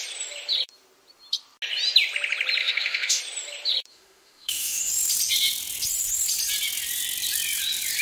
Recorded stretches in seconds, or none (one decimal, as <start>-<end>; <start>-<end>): 0.0-2.6; 3.2-3.9; 4.9-8.0